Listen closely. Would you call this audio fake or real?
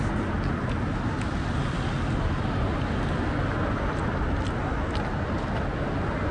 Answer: real